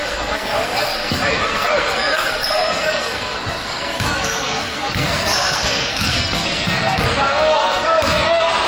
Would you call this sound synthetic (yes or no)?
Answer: yes